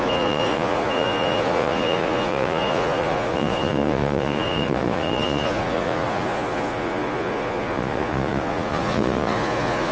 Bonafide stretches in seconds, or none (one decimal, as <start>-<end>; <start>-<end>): none